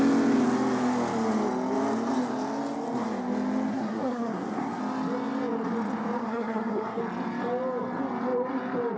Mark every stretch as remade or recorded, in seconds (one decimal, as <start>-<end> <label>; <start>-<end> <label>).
0.0-3.7 recorded; 3.7-4.8 remade; 4.8-6.2 recorded; 6.2-7.0 remade; 7.0-9.0 recorded